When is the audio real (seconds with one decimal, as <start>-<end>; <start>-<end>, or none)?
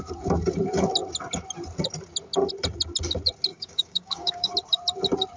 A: 0.0-3.5; 4.5-5.4